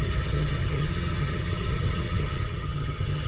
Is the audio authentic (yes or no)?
no